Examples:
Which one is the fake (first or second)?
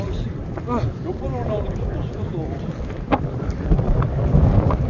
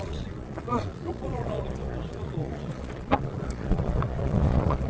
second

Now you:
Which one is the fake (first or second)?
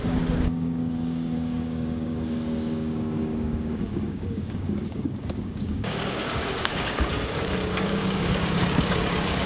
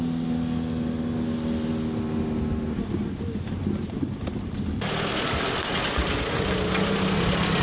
first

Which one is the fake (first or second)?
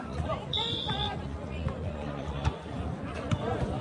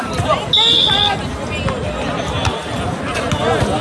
first